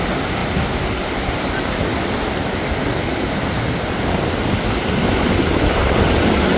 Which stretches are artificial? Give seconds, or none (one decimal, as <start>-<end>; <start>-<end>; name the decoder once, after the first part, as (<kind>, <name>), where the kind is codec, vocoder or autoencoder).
none